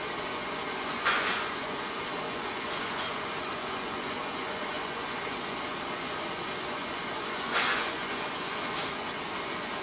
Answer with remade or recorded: remade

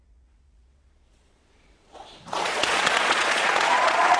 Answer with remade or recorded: remade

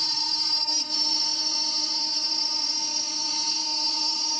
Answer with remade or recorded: remade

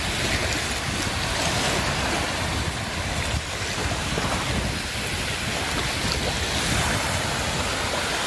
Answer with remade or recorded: recorded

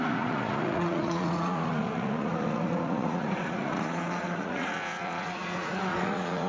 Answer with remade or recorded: remade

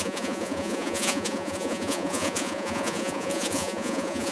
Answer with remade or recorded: remade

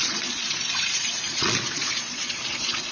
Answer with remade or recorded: remade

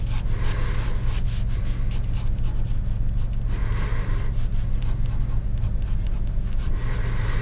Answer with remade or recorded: recorded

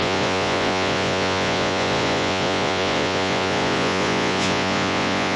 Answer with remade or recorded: remade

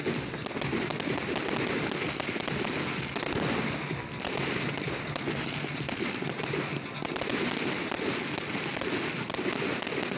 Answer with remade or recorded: recorded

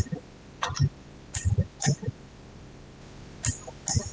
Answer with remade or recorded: recorded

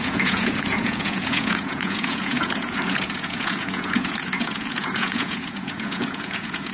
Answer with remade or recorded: remade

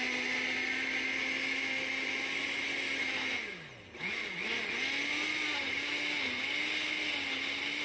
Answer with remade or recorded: recorded